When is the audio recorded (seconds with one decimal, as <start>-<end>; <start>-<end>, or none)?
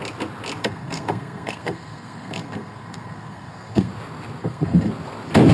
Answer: 0.0-0.6; 3.9-4.4; 4.9-5.5